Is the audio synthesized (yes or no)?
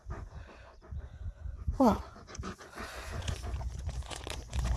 yes